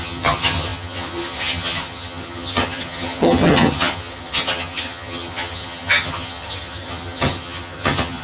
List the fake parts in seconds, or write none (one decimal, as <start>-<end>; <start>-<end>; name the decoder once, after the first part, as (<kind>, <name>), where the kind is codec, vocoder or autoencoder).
0.0-8.2 (vocoder, HiFi-GAN)